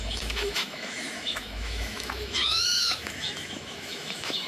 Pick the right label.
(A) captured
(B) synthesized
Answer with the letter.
B